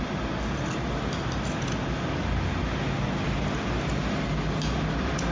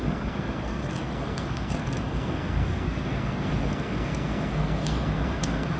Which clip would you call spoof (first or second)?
second